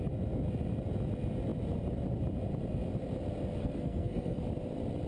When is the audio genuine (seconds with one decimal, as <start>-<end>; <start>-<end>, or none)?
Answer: 0.0-3.6; 4.4-5.1